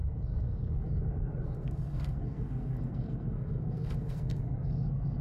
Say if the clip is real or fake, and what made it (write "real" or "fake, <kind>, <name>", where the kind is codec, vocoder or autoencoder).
fake, codec, SNAC